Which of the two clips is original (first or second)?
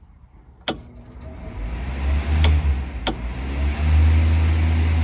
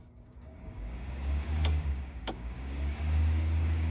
first